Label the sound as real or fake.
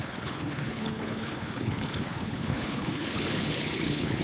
fake